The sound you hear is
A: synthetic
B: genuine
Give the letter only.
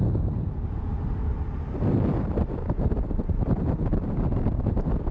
A